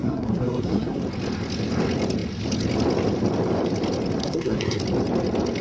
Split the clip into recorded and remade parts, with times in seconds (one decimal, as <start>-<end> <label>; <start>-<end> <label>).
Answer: 0.0-1.0 remade; 1.0-4.2 recorded; 4.2-4.8 remade; 4.8-5.6 recorded